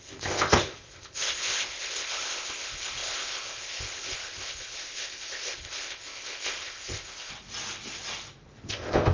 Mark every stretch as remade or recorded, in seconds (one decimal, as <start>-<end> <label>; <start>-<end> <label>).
0.0-7.3 remade; 7.3-8.7 recorded; 8.7-9.1 remade